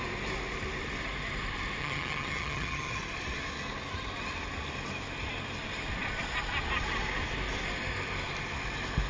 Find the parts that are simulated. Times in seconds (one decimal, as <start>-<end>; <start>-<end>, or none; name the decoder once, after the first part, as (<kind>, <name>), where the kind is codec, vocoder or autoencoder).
1.8-3.0 (vocoder, HiFi-GAN)